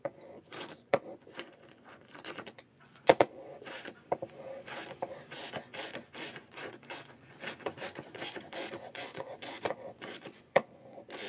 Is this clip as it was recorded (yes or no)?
no